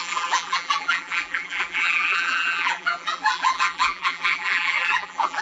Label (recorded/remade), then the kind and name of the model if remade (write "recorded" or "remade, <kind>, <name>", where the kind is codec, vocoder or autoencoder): remade, vocoder, BigVGAN v2